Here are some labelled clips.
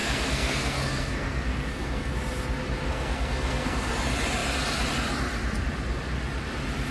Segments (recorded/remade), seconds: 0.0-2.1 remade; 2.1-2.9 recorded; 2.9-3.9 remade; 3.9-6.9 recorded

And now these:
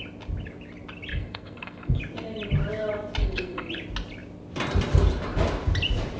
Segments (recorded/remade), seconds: 0.0-1.1 recorded; 1.1-2.0 remade; 2.0-3.2 recorded; 3.2-3.7 remade; 3.7-6.2 recorded